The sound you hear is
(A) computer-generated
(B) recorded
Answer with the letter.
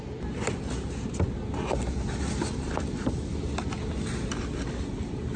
B